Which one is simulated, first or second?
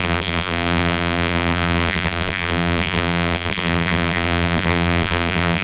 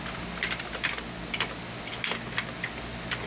first